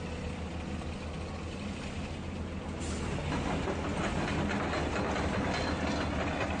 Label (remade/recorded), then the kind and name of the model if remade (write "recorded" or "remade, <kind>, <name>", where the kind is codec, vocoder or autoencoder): recorded